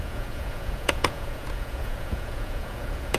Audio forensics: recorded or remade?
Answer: remade